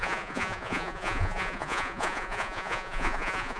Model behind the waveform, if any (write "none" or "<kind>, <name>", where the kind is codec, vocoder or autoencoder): vocoder, Vocos